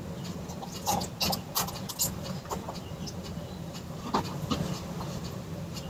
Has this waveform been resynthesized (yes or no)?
no